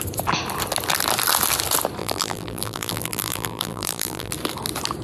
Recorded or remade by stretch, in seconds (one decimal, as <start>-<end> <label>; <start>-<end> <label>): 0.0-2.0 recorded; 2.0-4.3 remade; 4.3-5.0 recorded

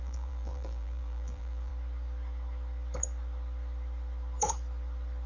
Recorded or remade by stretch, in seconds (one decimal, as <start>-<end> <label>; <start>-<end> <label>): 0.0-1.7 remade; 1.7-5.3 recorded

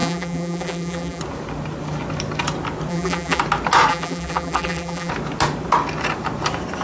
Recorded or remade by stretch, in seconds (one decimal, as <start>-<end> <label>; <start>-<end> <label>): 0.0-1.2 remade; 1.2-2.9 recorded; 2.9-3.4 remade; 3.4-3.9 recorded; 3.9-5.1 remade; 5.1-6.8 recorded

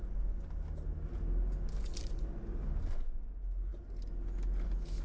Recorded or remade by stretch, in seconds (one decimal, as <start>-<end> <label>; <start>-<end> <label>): 0.0-5.0 recorded